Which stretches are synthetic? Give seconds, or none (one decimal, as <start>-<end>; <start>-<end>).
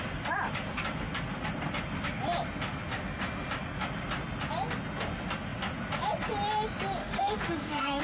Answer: 7.0-8.0